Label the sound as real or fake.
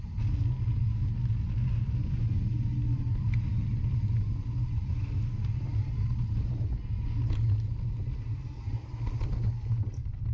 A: real